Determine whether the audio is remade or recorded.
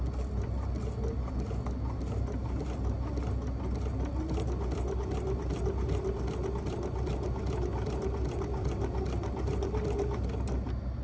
recorded